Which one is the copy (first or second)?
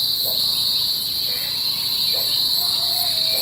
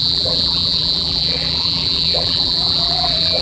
second